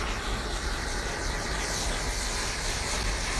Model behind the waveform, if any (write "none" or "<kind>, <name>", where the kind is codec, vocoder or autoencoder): none